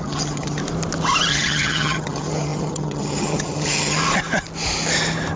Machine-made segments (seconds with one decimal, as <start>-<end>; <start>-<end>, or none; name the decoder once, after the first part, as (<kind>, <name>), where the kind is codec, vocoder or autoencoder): 0.0-0.6 (vocoder, HiFi-GAN); 1.3-4.0